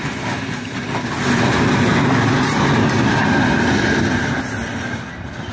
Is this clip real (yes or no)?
yes